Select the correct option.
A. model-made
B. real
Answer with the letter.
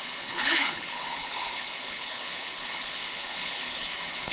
A